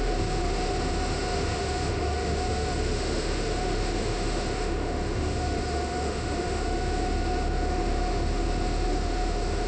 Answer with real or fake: fake